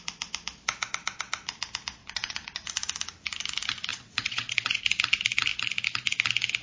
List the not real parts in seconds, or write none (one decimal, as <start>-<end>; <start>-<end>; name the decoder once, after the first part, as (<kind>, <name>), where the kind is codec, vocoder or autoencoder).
2.0-2.7 (vocoder, WaveNeXt); 3.9-4.8